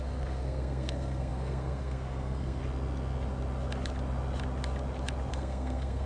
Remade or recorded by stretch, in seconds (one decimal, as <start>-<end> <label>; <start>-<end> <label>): 0.0-2.6 remade; 2.6-5.3 recorded; 5.3-6.1 remade